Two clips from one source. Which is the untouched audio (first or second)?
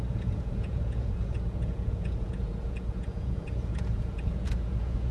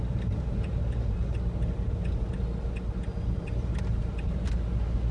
second